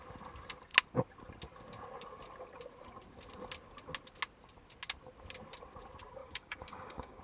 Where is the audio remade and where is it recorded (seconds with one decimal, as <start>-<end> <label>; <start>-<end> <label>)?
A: 0.0-6.2 recorded; 6.2-7.2 remade